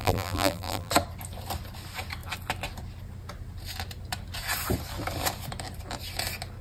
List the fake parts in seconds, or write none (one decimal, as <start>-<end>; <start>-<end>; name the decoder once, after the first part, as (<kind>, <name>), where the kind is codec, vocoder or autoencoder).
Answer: 0.0-0.9 (vocoder, BigVGAN v2)